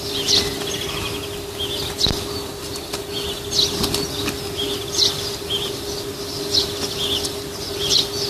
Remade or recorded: recorded